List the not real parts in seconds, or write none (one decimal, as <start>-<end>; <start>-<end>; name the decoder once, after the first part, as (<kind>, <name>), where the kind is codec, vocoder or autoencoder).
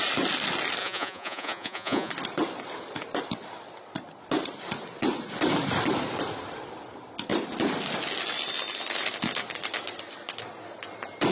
0.8-2.1 (vocoder, Vocos)